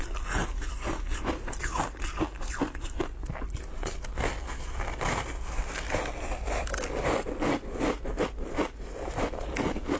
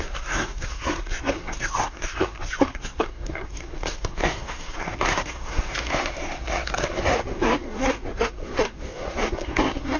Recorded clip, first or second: first